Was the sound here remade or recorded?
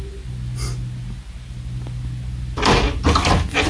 recorded